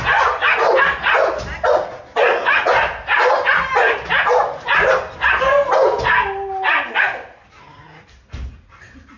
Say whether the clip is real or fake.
real